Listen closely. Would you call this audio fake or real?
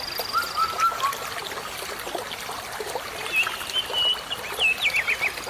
real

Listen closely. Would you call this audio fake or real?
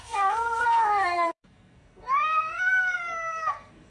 fake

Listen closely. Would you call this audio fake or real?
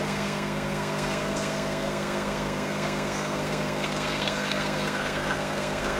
fake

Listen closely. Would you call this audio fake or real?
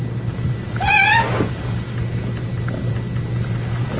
real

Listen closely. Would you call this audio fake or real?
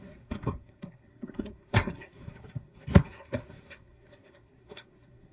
fake